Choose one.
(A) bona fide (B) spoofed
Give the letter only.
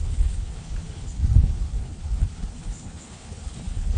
B